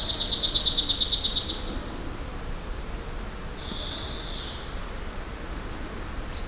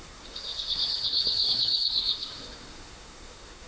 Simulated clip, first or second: second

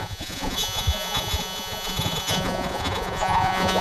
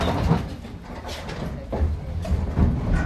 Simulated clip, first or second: first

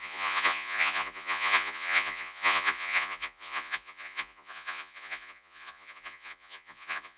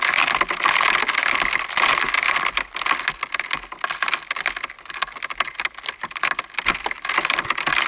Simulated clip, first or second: first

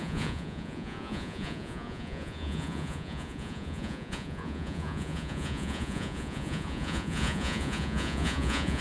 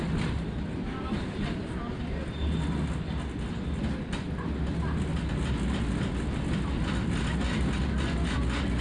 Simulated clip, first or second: first